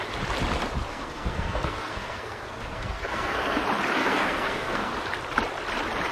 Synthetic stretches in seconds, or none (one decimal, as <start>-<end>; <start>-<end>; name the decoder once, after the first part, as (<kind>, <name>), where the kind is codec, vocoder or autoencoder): 0.9-3.6 (codec, SNAC); 4.0-4.9